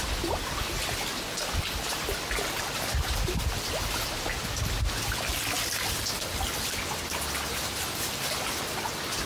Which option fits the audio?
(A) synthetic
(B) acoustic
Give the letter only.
B